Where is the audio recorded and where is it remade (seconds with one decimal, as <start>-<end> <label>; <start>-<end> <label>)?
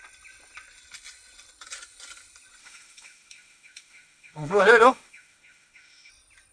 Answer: 0.0-2.6 recorded; 2.6-6.1 remade; 6.1-6.5 recorded